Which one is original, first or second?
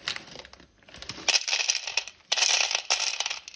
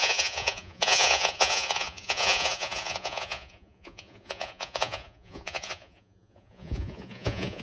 first